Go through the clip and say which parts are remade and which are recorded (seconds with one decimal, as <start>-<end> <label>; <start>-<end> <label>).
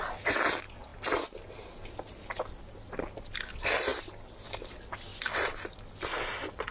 0.0-6.7 recorded